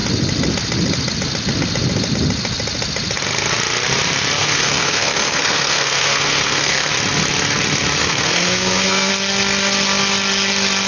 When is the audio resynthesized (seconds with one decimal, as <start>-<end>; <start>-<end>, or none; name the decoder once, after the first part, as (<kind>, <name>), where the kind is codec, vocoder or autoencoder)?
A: 4.4-6.9 (codec, SNAC); 8.0-9.1